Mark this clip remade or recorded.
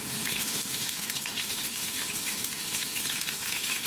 remade